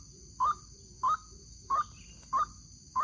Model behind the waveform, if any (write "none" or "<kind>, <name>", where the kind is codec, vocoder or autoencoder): none